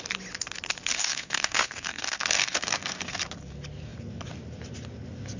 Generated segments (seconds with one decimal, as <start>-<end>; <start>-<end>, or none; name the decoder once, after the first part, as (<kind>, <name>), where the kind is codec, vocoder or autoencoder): 0.9-3.2 (codec, SNAC)